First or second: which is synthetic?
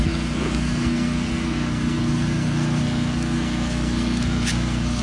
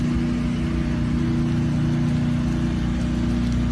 first